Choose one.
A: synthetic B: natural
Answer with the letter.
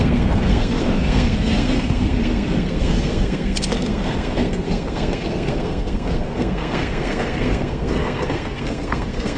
A